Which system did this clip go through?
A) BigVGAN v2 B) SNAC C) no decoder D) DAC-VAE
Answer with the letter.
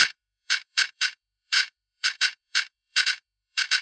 D